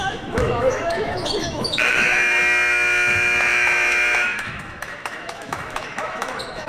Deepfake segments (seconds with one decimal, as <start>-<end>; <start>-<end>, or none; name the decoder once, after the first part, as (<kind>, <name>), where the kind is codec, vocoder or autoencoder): 0.0-6.7 (autoencoder, DAC-VAE)